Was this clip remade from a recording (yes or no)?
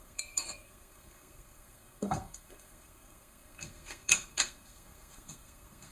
yes